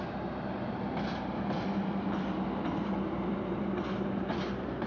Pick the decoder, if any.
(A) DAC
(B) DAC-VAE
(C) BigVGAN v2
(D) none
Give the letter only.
C